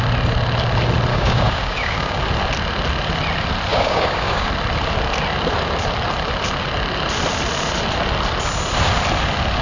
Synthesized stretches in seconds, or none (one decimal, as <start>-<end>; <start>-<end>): 1.1-2.2; 3.7-4.5